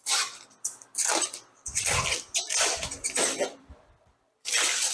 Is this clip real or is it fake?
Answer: fake